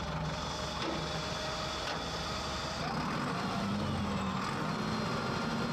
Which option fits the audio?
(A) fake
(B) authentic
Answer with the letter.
B